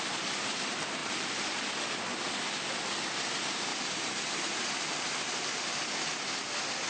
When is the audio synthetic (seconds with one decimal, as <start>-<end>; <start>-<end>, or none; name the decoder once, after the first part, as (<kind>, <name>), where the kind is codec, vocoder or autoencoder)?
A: 1.0-1.6 (vocoder, BigVGAN v2); 3.7-4.5